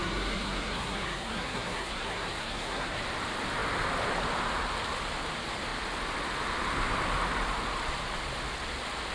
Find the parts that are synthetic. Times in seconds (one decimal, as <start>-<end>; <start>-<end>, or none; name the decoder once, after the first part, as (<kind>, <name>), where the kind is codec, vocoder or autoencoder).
0.0-3.0 (codec, SNAC)